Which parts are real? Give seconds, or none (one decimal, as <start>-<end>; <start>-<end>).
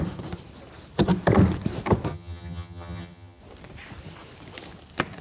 0.0-2.1; 3.4-5.2